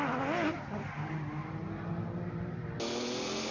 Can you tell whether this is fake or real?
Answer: real